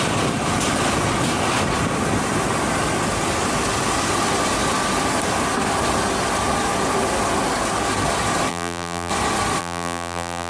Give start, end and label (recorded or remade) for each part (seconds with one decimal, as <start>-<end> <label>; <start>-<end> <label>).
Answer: 0.0-8.5 recorded; 8.5-9.1 remade; 9.1-9.6 recorded; 9.6-10.5 remade